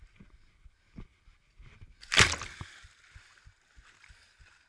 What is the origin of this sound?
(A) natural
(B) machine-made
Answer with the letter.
A